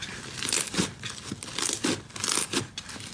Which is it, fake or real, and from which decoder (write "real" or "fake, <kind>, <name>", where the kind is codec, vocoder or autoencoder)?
real